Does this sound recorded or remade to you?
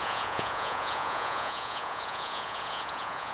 remade